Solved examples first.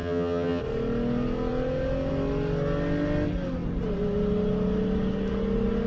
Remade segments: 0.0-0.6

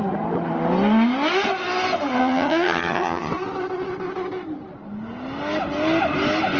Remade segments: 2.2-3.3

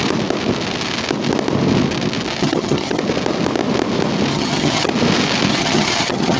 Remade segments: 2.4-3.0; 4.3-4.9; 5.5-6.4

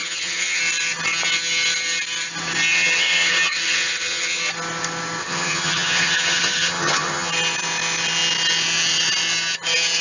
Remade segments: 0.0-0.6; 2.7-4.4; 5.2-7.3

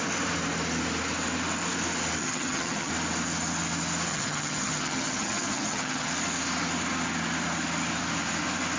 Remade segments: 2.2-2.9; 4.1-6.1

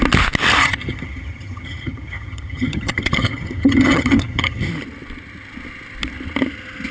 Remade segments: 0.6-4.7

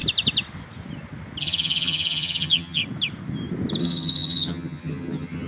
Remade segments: 1.4-2.8; 3.8-5.5